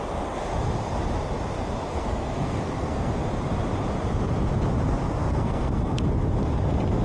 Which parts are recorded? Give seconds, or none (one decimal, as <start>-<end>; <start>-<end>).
0.0-1.9; 3.1-5.2; 6.0-7.0